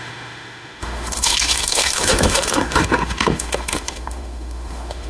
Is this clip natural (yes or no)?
no